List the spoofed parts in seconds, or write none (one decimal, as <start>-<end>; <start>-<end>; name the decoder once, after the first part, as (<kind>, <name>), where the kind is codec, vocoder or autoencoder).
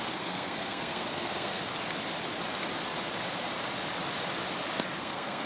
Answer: 0.0-1.7 (codec, SNAC); 5.0-5.5